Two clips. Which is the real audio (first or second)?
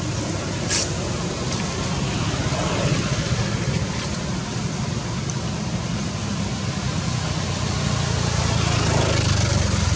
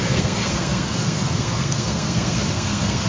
first